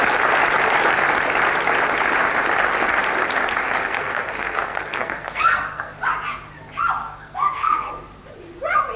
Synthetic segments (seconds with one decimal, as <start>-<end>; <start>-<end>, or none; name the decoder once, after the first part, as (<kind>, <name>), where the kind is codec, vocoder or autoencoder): 3.8-6.0 (codec, SNAC); 7.0-8.0